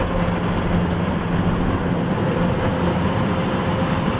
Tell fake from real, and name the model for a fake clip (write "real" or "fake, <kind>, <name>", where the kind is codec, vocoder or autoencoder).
real